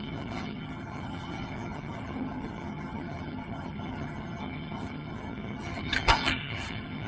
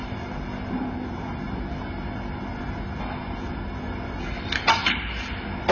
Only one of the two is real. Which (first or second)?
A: second